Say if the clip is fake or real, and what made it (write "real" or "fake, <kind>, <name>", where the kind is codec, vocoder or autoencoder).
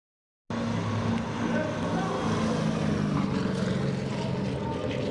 real